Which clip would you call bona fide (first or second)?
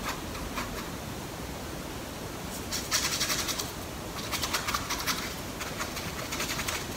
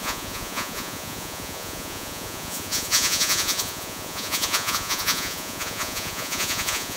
first